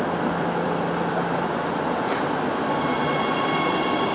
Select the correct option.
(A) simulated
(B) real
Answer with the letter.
B